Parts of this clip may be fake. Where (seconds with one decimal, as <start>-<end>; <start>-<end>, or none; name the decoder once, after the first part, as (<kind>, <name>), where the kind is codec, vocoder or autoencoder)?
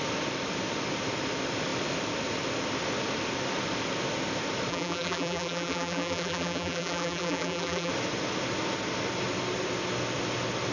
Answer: 4.7-7.9 (vocoder, BigVGAN v2)